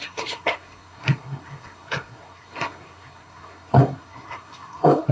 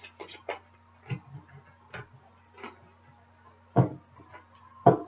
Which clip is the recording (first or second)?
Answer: second